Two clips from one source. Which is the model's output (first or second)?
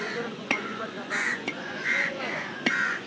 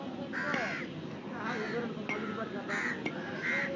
first